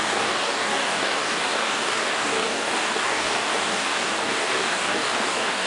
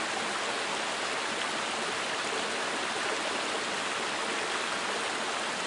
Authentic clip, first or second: second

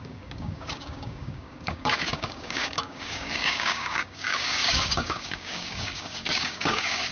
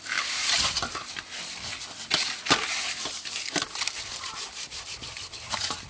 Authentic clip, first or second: second